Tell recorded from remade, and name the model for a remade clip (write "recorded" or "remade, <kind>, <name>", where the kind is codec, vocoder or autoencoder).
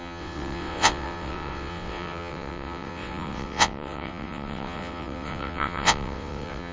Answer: remade, vocoder, WaveNeXt